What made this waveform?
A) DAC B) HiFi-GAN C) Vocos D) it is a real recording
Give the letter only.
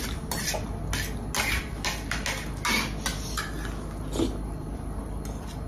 D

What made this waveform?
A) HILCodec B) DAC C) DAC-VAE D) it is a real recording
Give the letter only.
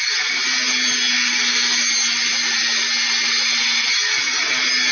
D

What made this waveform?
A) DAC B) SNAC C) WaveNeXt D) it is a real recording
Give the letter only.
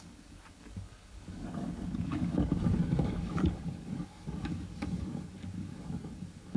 A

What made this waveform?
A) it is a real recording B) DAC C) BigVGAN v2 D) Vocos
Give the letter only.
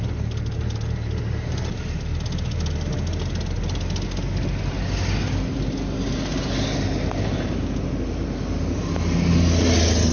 A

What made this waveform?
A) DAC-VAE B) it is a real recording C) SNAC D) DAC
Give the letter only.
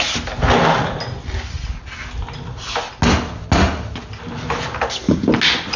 B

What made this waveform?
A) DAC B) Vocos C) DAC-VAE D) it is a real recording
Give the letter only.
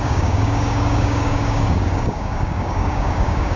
A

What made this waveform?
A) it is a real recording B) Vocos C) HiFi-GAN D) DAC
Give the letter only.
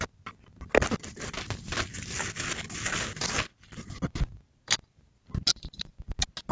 A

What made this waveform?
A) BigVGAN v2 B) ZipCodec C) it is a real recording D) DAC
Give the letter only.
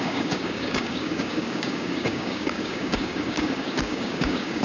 D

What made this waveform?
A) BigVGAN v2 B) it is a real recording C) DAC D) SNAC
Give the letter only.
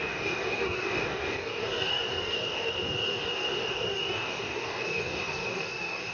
C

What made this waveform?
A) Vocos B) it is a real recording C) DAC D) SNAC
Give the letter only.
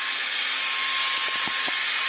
B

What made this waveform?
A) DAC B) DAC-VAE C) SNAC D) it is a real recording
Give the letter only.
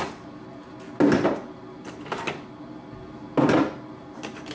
D